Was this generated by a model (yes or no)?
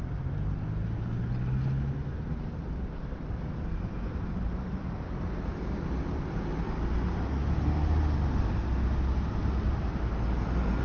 no